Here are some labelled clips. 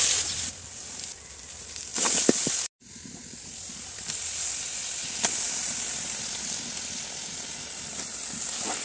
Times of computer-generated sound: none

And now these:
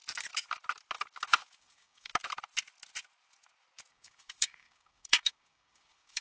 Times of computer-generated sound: 1.6-2.1 (codec, DAC); 3.9-6.2